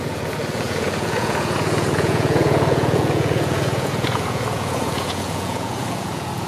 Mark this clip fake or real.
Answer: fake